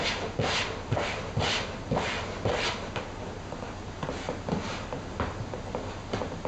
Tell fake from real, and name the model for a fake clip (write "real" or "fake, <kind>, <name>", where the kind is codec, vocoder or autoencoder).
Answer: real